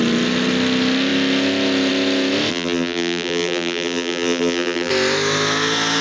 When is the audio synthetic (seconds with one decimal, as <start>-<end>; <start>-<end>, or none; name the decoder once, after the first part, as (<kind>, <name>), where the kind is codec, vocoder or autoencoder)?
2.5-4.9 (vocoder, BigVGAN v2)